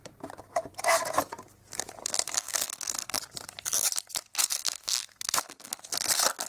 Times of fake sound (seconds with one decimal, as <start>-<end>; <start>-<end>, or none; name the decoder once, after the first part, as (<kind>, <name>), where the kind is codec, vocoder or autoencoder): 2.0-3.2 (codec, SNAC); 4.3-5.9